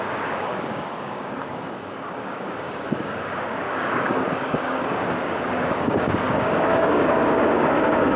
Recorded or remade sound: remade